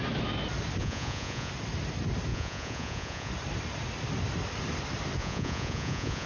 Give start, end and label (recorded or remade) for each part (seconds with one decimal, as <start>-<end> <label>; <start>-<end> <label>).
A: 0.0-0.8 recorded; 0.8-1.5 remade; 1.5-2.3 recorded; 2.3-3.3 remade; 3.3-5.2 recorded; 5.2-6.3 remade